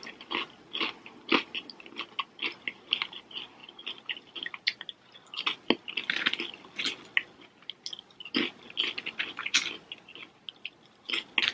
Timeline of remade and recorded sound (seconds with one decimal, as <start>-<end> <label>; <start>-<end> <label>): 0.0-11.5 recorded